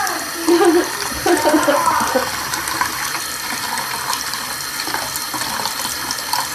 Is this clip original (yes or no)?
yes